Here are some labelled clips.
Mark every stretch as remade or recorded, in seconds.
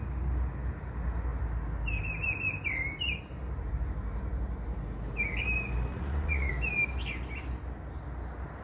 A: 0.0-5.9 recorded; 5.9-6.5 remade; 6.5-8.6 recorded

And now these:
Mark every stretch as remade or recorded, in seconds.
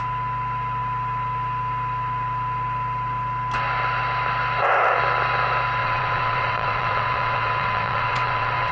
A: 0.0-5.8 recorded; 5.8-8.7 remade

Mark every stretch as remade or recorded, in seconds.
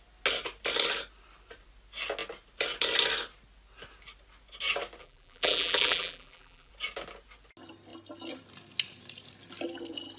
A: 0.0-5.0 recorded; 5.0-6.7 remade; 6.7-10.2 recorded